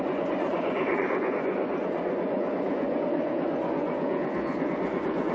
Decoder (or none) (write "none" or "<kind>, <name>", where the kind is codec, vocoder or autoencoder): vocoder, Vocos